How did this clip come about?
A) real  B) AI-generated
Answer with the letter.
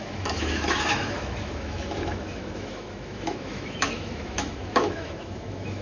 B